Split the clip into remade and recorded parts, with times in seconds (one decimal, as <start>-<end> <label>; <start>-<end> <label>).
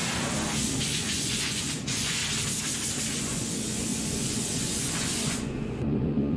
0.0-0.8 recorded; 0.8-2.2 remade; 2.2-3.1 recorded; 3.1-6.4 remade